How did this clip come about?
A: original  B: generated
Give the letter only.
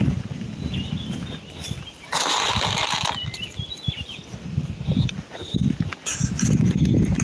A